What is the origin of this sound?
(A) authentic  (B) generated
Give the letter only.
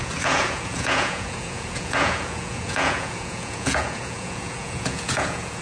B